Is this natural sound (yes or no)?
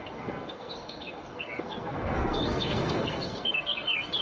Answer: no